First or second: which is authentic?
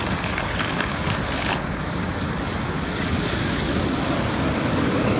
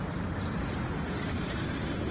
second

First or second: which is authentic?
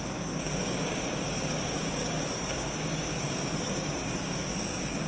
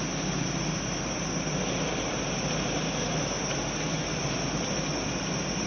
second